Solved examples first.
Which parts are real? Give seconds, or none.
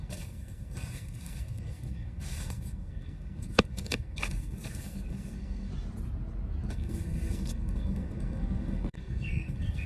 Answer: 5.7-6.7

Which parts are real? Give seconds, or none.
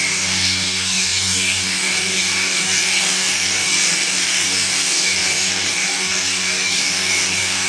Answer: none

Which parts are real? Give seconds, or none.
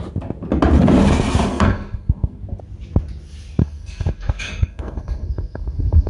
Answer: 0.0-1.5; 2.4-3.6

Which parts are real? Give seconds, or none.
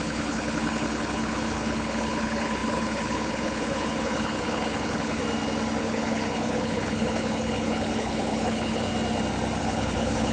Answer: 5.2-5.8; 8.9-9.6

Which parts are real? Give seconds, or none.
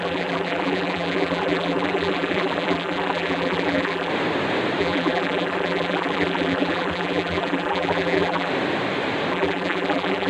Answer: 4.1-4.8; 8.5-9.3